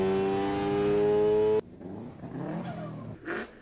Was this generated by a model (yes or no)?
no